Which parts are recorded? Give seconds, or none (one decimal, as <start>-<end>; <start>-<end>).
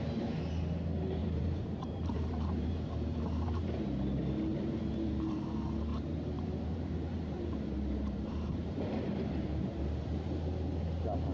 0.0-1.2; 3.7-4.5; 5.5-5.9; 9.8-11.3